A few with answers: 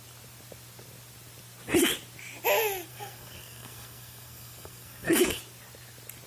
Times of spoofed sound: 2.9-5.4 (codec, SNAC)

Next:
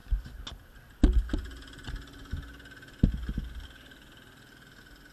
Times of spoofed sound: none

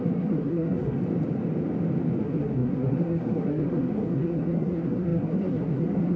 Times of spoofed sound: 0.0-1.0 (codec, SNAC); 2.2-6.2

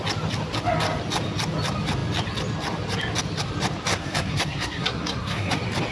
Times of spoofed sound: 3.9-5.5 (codec, SNAC)

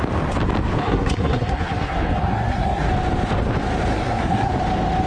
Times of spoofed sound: 0.8-2.9 (codec, SNAC); 3.9-4.5

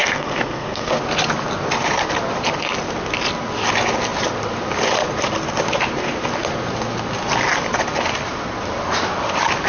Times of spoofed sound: 0.0-1.0 (codec, SNAC)